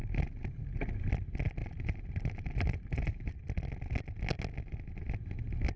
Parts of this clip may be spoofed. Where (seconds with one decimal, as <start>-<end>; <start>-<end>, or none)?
0.0-1.0; 1.6-3.3